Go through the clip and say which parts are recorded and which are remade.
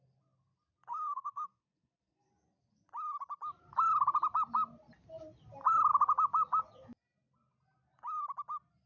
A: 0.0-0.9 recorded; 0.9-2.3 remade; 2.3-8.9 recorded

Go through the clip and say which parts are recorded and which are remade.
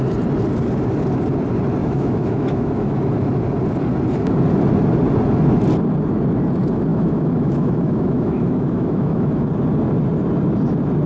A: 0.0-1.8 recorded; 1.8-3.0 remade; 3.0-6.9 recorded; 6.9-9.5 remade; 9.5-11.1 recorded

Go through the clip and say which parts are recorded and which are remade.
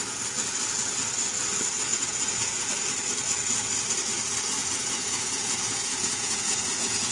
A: 0.0-1.9 recorded; 1.9-2.7 remade; 2.7-4.6 recorded; 4.6-7.1 remade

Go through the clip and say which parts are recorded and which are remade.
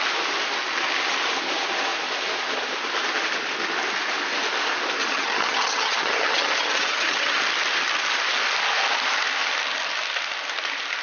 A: 0.0-5.0 recorded; 5.0-7.4 remade; 7.4-11.0 recorded